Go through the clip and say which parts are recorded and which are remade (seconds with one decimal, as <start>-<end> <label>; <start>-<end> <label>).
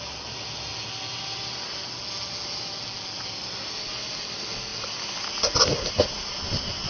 0.0-6.9 recorded